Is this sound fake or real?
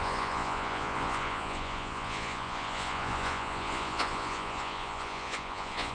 fake